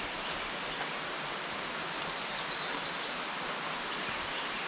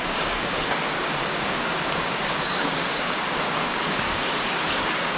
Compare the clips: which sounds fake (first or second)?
second